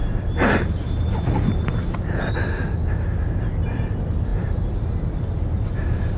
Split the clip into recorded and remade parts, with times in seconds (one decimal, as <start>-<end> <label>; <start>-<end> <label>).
0.0-4.3 recorded; 4.3-5.0 remade; 5.0-6.2 recorded

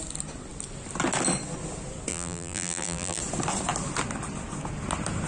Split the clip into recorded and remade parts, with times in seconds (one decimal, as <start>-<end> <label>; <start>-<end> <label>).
0.0-2.1 recorded; 2.1-3.2 remade; 3.2-5.3 recorded

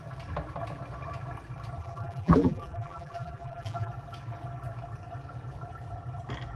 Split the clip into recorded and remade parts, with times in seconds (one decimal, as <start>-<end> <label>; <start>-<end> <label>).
0.0-1.8 recorded; 1.8-3.9 remade; 3.9-6.6 recorded

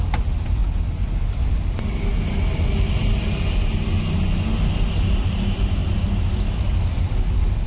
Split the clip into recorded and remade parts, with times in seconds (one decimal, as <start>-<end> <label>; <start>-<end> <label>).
0.0-7.7 recorded

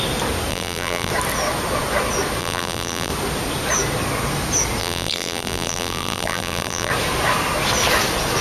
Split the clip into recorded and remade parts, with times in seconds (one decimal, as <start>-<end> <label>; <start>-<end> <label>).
0.0-0.5 recorded; 0.5-1.1 remade; 1.1-2.4 recorded; 2.4-3.1 remade; 3.1-4.8 recorded; 4.8-6.9 remade; 6.9-8.4 recorded

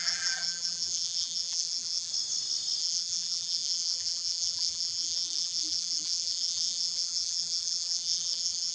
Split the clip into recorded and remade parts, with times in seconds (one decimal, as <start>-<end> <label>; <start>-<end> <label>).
0.0-2.1 remade; 2.1-2.8 recorded; 2.8-8.7 remade